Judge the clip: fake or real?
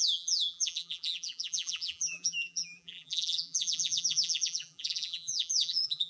fake